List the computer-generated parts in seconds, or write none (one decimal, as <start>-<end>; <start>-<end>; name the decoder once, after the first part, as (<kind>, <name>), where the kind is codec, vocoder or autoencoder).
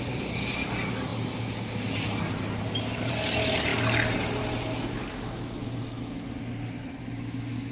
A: none